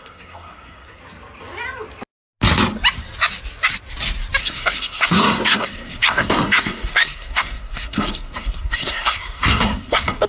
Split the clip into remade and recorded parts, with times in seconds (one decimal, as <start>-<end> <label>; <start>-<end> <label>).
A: 0.0-1.0 remade; 1.0-4.4 recorded; 4.4-10.3 remade